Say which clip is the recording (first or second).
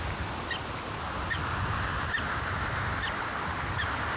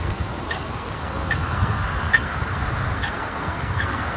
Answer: first